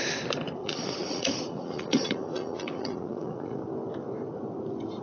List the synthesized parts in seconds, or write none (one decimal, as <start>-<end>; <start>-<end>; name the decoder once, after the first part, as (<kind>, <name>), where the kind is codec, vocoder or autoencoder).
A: 0.6-3.6 (vocoder, Vocos)